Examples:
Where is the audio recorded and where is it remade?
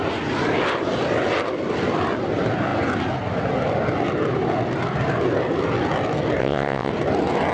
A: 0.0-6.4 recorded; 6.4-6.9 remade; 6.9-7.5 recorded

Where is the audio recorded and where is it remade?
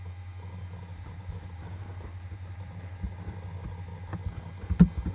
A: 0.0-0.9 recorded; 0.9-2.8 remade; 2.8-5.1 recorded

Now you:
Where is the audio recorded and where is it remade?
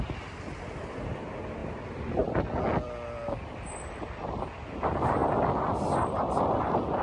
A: 0.0-7.0 recorded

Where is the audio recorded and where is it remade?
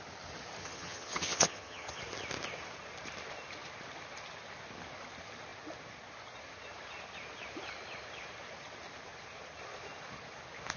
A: 0.0-0.6 recorded; 0.6-2.0 remade; 2.0-10.8 recorded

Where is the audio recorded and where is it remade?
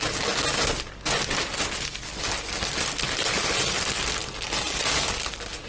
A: 0.0-5.7 recorded